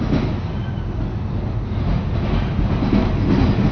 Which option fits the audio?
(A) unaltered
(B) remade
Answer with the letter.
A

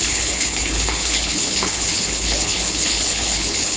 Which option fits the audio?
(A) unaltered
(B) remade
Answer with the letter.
B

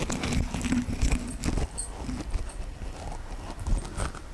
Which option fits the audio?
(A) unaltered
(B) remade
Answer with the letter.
A